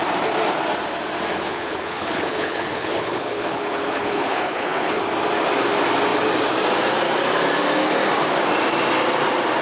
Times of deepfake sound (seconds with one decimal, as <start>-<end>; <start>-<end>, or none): 1.3-5.0